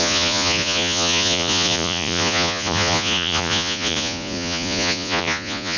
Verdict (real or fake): fake